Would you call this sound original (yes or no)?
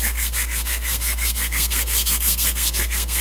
no